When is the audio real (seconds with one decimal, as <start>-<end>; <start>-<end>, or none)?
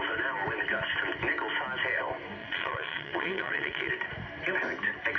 0.0-2.4; 3.9-5.2